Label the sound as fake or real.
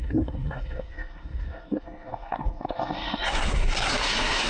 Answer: fake